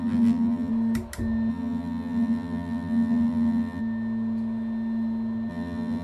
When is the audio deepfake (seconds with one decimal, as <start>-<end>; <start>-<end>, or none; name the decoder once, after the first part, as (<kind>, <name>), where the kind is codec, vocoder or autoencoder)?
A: 0.0-0.7 (vocoder, BigVGAN v2); 1.5-3.8; 5.5-6.0